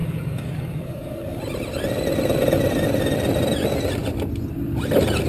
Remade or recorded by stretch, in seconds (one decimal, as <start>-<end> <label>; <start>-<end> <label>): 0.0-1.4 remade; 1.4-5.3 recorded